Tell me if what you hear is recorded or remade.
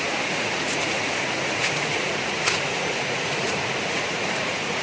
remade